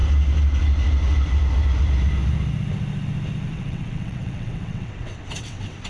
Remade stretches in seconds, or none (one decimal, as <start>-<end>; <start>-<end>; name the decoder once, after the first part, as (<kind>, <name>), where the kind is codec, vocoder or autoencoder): 3.5-5.9 (vocoder, WaveNeXt)